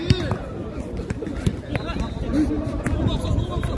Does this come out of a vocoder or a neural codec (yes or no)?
no